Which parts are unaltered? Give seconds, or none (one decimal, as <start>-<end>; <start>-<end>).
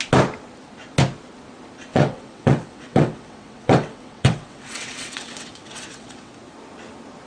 0.0-1.9; 6.3-7.3